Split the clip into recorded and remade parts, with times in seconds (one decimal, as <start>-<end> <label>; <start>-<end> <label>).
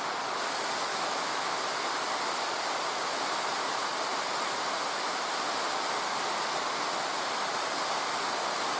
0.0-0.9 recorded; 0.9-1.6 remade; 1.6-8.8 recorded